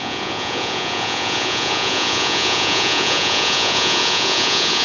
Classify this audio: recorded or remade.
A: remade